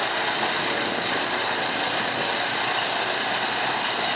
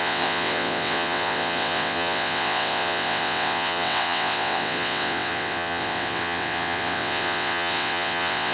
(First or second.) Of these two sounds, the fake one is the second